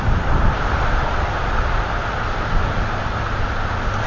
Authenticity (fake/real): real